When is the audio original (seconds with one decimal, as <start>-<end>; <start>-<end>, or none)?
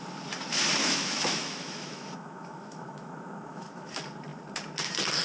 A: 0.0-0.8; 3.9-5.2